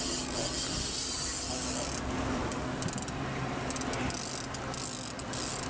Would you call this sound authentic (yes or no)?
yes